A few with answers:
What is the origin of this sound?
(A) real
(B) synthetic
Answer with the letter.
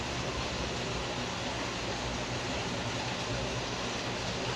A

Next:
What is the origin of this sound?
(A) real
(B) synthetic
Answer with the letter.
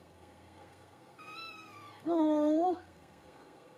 B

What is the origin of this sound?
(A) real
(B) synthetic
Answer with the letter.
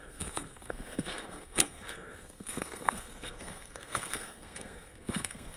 B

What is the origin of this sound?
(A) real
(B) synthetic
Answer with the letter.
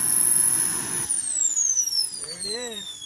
B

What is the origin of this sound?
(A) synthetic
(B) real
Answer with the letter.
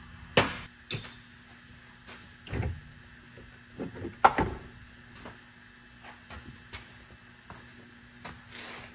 B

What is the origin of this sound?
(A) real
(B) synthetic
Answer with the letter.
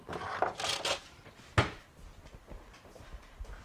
A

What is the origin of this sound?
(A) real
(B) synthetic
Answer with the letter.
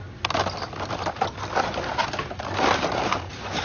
A